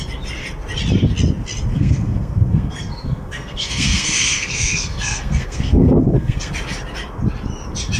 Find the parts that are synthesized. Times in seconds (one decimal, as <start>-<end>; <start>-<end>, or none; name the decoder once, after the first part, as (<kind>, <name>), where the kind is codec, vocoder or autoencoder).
1.7-6.5 (codec, SNAC)